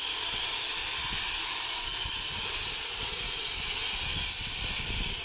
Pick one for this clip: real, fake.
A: real